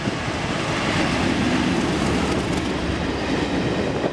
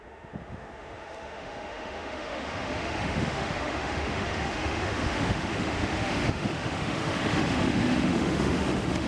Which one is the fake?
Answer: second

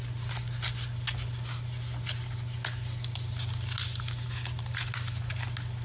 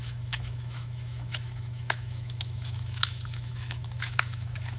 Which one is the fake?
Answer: second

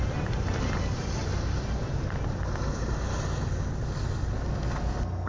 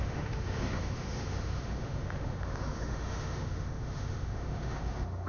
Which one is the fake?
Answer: second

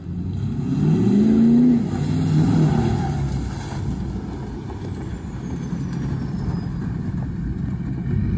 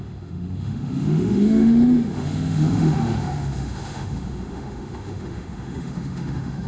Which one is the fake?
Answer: second